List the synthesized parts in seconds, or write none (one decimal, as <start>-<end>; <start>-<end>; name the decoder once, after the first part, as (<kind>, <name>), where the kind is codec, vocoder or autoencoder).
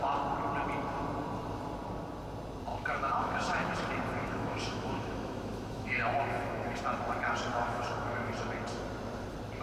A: 2.7-3.7 (autoencoder, DAC-VAE); 4.2-6.8; 7.5-8.3